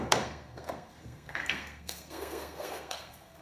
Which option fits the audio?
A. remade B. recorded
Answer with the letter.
A